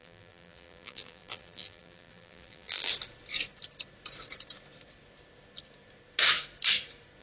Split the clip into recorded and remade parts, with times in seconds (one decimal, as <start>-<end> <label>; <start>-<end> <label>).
0.0-2.9 remade; 2.9-7.2 recorded